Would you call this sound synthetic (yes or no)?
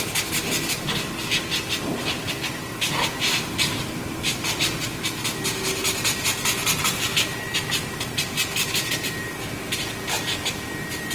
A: no